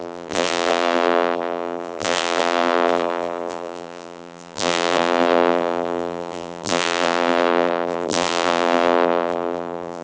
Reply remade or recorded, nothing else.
remade